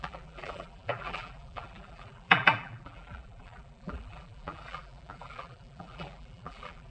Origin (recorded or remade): remade